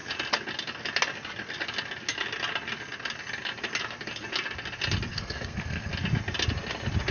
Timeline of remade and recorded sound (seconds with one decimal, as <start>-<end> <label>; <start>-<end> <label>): 0.0-5.1 recorded; 5.1-5.9 remade; 5.9-7.1 recorded